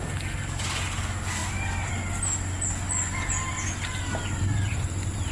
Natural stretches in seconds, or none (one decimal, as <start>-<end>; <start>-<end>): 0.0-5.3